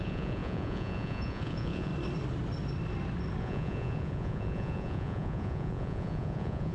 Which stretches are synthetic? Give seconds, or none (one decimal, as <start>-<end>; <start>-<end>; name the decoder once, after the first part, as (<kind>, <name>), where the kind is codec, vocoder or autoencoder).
0.0-1.9 (vocoder, Vocos); 3.4-6.7